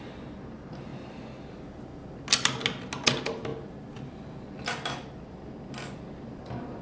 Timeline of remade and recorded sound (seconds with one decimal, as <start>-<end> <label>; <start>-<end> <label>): 0.0-6.8 recorded